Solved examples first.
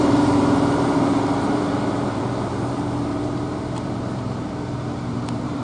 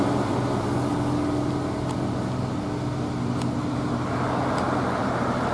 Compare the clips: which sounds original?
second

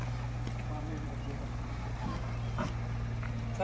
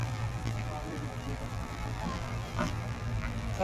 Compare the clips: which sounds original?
first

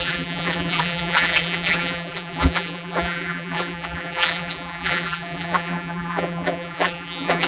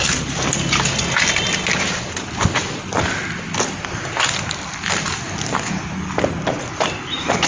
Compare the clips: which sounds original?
second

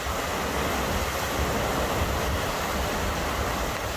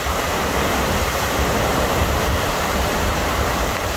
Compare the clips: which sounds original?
first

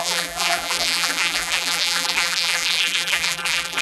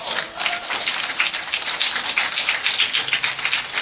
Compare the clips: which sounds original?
second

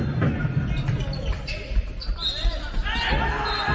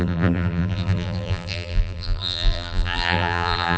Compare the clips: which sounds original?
first